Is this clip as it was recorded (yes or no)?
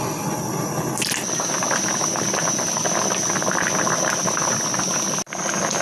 yes